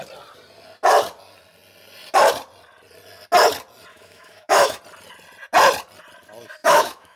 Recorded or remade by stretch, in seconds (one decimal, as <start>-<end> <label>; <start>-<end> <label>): 0.0-3.9 recorded; 3.9-4.8 remade; 4.8-6.6 recorded; 6.6-7.2 remade